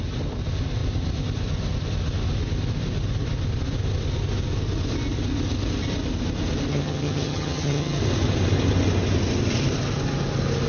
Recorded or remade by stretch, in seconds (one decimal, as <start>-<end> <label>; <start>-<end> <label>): 0.0-6.7 recorded; 6.7-8.0 remade; 8.0-10.7 recorded